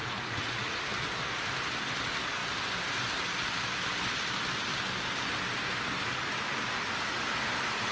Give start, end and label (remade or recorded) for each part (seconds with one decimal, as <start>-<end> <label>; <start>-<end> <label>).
0.0-0.8 remade; 0.8-7.9 recorded